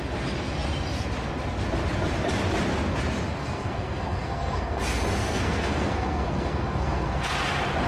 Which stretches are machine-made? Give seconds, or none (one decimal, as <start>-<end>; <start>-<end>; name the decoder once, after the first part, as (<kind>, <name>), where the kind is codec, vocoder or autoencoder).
3.4-4.8 (codec, SNAC); 5.2-7.3